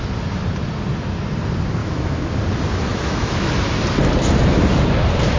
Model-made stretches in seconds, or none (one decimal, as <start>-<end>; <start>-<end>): 1.8-2.4; 2.9-3.5